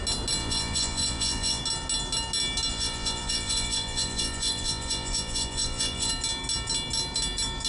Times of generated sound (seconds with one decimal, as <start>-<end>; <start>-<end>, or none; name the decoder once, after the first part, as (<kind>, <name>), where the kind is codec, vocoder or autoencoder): 0.4-1.6 (vocoder, Vocos); 2.7-6.1